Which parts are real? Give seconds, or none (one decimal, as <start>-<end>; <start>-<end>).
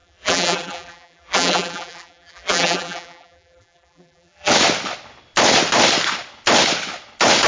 4.5-7.5